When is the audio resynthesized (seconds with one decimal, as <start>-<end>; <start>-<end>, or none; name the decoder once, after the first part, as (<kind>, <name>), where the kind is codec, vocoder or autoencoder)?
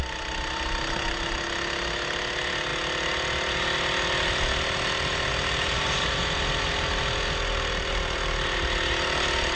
none